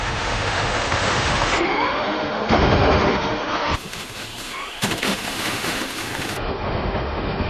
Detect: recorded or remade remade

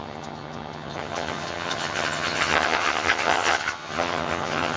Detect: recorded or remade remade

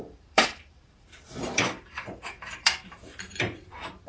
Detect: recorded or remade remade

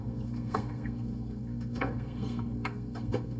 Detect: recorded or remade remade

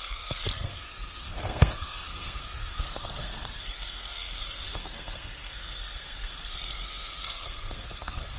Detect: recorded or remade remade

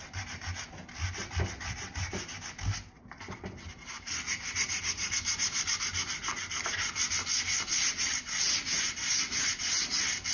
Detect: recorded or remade recorded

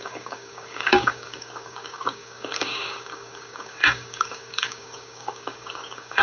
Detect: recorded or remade remade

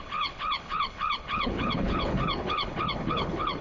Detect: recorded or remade remade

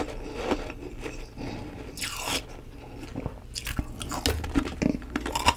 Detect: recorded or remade recorded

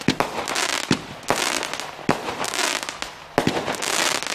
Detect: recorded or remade recorded